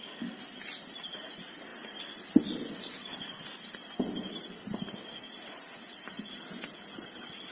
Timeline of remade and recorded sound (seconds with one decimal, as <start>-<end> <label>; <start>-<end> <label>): 0.0-7.5 recorded